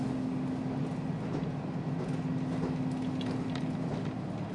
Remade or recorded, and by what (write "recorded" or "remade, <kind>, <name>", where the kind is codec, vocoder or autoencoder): recorded